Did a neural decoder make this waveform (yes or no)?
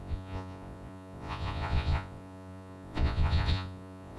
yes